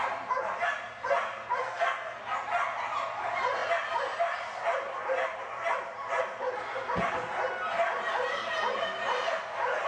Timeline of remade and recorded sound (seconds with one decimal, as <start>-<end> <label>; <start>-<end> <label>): 0.0-1.6 recorded; 1.6-2.2 remade; 2.2-9.9 recorded